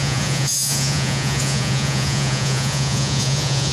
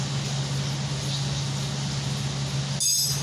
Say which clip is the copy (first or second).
first